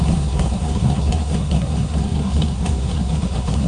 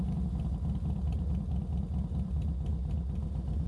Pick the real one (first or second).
second